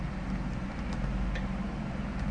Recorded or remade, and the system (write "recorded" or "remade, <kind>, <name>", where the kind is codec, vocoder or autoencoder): recorded